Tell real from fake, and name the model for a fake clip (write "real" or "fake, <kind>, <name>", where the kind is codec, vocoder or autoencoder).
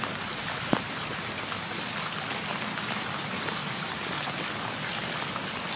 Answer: real